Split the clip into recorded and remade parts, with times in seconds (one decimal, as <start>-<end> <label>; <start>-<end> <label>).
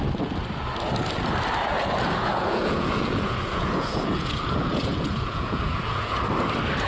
0.0-2.3 recorded; 2.3-6.2 remade; 6.2-6.9 recorded